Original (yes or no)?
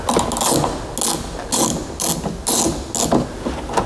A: yes